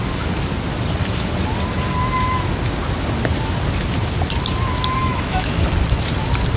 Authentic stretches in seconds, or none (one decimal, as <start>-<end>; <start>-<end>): 0.0-5.0; 5.6-6.6